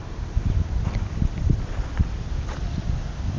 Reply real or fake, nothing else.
real